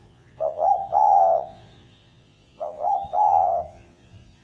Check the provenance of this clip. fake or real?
fake